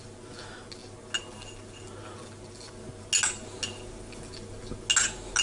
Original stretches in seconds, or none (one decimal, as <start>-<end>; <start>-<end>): 0.0-5.4